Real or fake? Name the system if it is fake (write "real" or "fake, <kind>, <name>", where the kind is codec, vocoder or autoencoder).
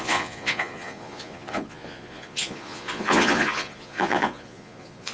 fake, vocoder, Vocos